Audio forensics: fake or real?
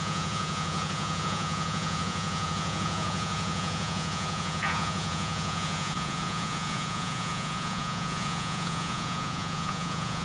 fake